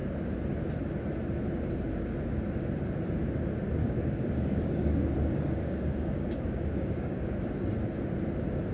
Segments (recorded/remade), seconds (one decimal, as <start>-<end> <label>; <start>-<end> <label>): 0.0-3.8 recorded; 3.8-7.2 remade; 7.2-8.7 recorded